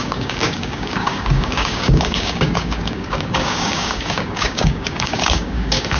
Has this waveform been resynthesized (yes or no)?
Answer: yes